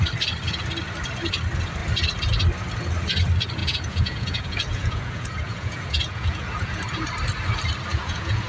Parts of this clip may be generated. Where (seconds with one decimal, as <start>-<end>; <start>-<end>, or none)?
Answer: 3.6-6.8; 7.9-8.5